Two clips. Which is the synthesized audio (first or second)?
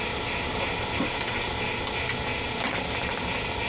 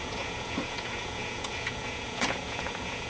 second